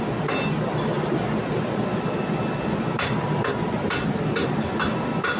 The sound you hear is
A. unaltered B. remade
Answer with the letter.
A